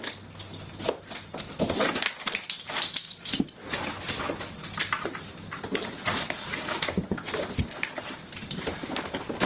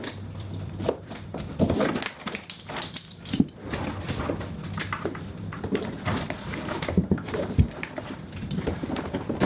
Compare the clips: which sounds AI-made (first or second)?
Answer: second